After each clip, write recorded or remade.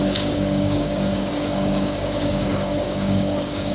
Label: remade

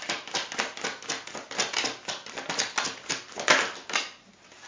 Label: recorded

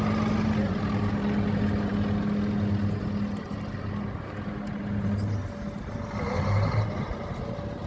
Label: recorded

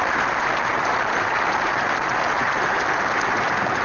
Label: recorded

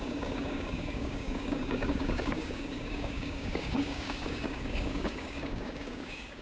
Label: remade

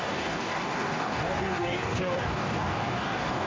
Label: remade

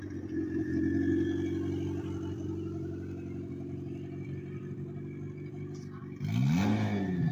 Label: recorded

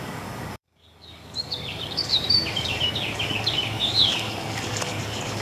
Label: remade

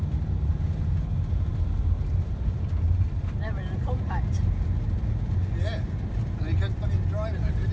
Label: recorded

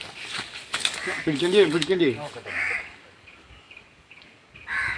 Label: remade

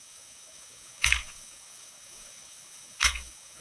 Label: remade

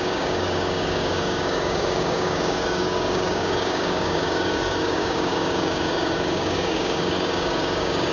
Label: remade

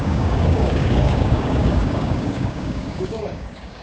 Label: remade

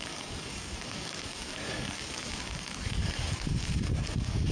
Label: remade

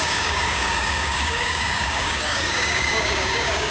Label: remade